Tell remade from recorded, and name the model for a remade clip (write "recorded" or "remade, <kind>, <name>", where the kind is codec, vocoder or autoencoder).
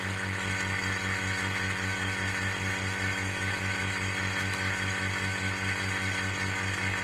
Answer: remade, autoencoder, DAC-VAE